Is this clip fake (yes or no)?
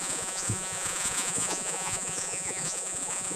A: yes